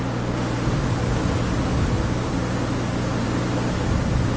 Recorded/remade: recorded